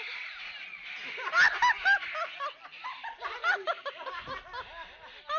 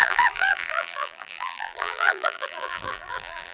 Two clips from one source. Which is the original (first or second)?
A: first